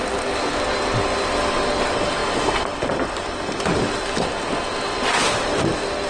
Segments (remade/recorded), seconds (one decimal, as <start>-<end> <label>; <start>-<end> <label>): 0.0-6.1 recorded